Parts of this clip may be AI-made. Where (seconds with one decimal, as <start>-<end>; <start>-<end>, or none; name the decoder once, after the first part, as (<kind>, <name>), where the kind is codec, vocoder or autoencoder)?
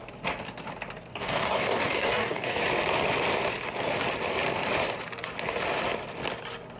1.1-2.6 (codec, DAC)